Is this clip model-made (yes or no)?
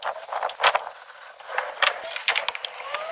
no